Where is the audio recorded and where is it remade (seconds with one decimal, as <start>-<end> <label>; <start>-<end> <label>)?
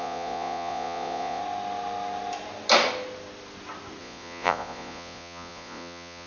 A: 0.0-1.4 remade; 1.4-4.0 recorded; 4.0-6.3 remade